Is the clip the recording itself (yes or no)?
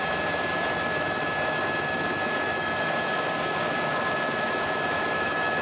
no